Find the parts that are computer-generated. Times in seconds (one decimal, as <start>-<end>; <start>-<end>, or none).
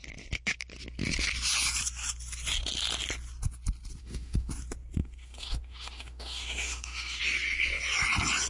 4.0-4.5; 5.0-7.2